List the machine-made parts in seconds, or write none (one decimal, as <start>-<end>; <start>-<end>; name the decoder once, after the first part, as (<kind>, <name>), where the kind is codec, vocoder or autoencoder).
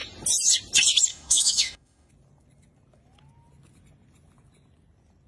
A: 1.1-2.1 (autoencoder, DAC-VAE)